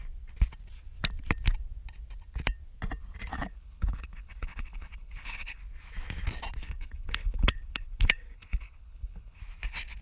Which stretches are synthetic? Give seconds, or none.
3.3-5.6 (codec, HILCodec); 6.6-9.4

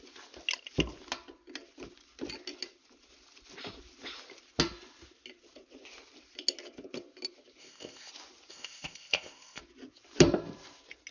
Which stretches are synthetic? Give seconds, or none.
7.6-8.1 (codec, ZipCodec); 8.5-9.6